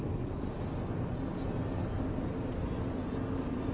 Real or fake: real